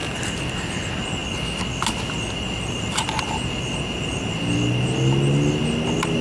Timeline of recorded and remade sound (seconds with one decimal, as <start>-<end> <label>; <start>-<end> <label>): 0.0-6.2 recorded